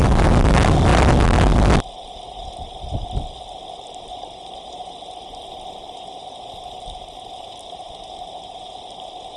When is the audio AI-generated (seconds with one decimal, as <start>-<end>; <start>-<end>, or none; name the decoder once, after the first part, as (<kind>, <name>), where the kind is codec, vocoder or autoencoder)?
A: none